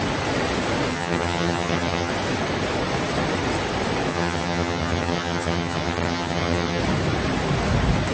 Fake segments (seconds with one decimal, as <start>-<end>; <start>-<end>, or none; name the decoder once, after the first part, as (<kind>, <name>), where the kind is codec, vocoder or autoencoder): 0.9-2.1 (vocoder, HiFi-GAN); 4.1-6.8